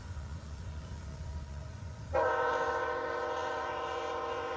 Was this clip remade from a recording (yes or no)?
yes